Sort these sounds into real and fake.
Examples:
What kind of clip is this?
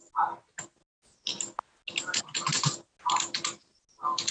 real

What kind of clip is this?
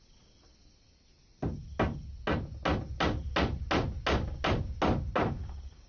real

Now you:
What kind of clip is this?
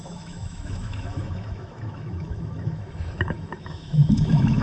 fake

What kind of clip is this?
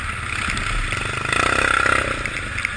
real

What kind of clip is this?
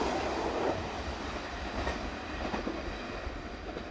real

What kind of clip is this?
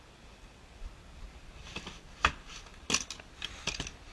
real